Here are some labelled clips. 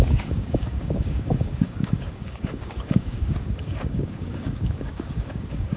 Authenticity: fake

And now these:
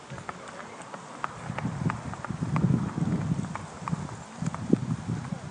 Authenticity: real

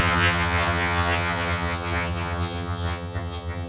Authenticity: fake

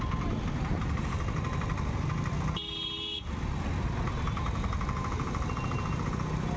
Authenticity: real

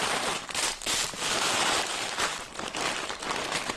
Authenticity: fake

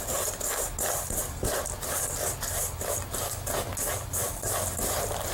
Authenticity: real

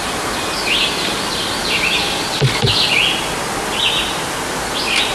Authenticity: real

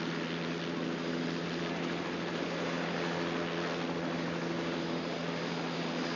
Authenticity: real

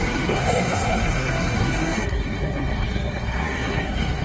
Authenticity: fake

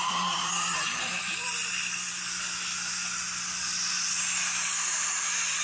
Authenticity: real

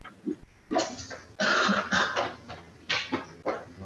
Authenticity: real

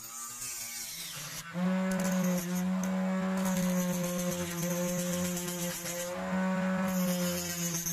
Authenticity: real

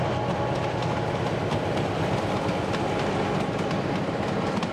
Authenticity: real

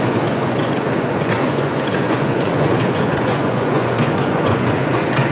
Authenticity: fake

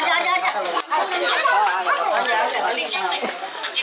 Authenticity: real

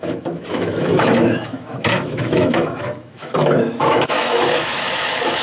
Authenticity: fake